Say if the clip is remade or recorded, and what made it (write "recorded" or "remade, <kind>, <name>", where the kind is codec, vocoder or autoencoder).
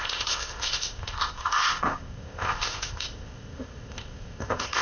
remade, codec, ZipCodec